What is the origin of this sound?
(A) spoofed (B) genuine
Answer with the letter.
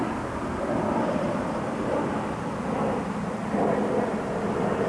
B